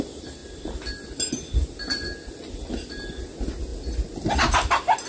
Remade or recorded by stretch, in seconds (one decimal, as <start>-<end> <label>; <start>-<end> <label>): 0.0-5.1 recorded